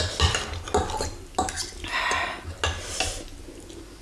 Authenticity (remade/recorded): recorded